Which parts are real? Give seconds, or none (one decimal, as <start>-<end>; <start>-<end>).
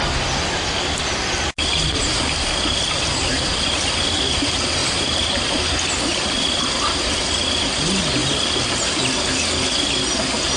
0.0-10.6